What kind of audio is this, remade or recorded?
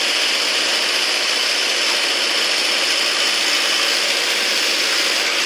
recorded